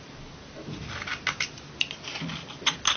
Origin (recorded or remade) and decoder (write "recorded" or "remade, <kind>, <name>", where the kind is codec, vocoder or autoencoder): recorded